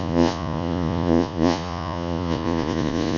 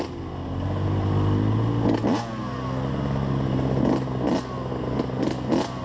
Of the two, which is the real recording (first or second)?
second